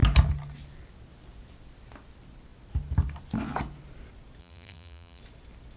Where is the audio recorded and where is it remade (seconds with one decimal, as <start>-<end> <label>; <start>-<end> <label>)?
0.0-4.4 recorded; 4.4-5.2 remade; 5.2-5.8 recorded